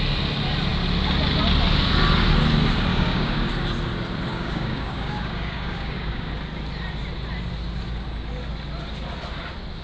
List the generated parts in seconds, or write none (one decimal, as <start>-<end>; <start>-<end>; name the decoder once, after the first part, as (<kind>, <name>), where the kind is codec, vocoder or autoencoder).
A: 2.9-3.5 (codec, DAC); 4.3-6.3

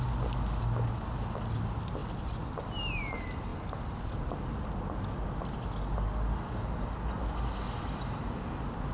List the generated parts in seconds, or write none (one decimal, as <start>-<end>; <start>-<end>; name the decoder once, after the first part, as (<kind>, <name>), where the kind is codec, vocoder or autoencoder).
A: none

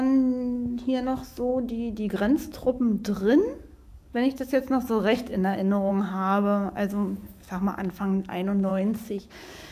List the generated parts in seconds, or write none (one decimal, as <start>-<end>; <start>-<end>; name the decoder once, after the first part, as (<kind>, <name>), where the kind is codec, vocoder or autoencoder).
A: 0.0-1.5 (codec, DAC); 2.1-8.7; 9.2-9.7